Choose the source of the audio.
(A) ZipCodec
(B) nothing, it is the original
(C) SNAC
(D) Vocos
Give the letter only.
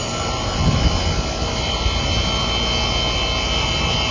B